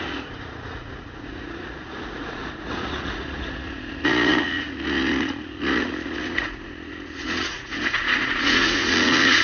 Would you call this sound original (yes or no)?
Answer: no